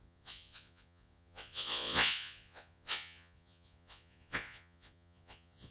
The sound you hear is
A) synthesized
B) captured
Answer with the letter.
A